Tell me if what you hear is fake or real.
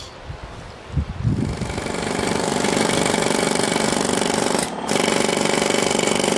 real